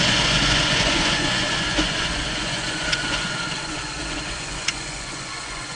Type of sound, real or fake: fake